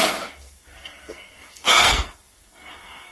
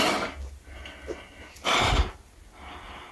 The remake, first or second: first